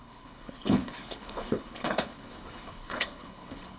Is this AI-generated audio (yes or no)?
yes